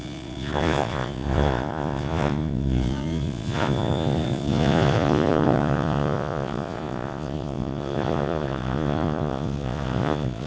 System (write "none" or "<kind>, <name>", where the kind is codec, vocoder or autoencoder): vocoder, Vocos